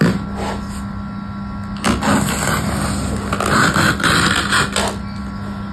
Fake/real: real